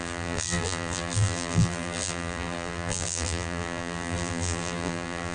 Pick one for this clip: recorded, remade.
remade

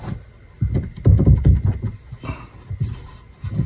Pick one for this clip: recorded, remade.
recorded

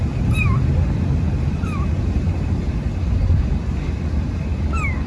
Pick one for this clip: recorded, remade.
recorded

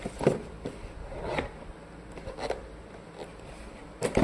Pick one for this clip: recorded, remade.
recorded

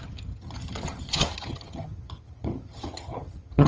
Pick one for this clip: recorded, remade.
remade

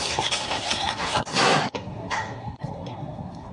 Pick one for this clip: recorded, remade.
remade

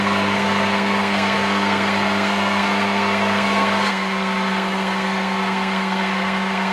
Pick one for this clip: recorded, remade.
remade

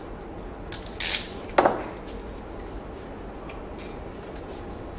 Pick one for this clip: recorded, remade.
recorded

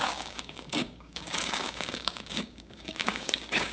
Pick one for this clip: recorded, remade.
remade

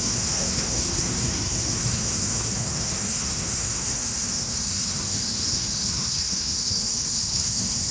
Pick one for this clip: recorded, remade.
remade